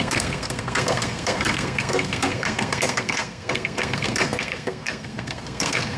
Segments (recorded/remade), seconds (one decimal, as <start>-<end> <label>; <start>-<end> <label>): 0.0-6.0 remade